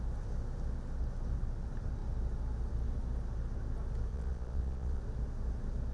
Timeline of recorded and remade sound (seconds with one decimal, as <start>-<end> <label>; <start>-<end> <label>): 0.0-4.1 recorded; 4.1-5.0 remade; 5.0-5.9 recorded